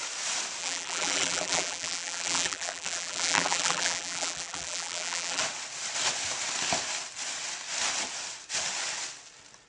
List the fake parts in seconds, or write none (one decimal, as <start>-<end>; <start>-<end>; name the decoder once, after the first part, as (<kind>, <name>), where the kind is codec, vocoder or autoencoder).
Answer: 0.6-5.4 (vocoder, BigVGAN v2)

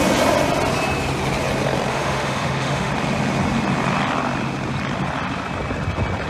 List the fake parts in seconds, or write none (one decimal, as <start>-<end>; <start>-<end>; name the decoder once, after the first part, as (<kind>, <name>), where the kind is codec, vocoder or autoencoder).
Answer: 1.9-2.9 (autoencoder, DAC-VAE)